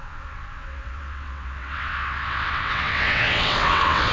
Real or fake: fake